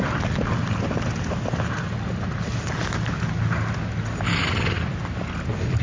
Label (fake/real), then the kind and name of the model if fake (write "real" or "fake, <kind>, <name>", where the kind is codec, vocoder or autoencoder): real